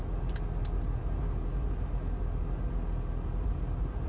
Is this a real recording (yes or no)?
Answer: yes